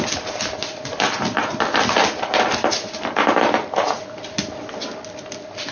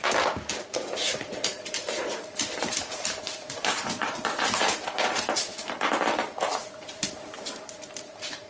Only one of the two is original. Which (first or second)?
first